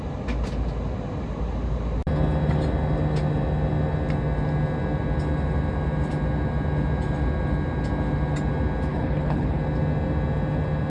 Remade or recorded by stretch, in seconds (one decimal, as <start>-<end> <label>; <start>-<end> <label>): 0.0-8.9 recorded; 8.9-9.6 remade; 9.6-10.9 recorded